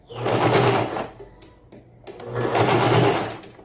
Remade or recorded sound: recorded